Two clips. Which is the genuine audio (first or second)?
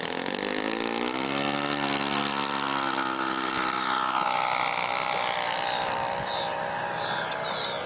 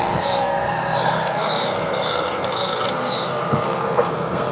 first